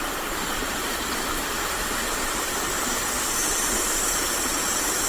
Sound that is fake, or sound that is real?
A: fake